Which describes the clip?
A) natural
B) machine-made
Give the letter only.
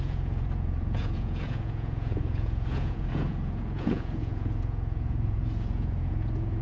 B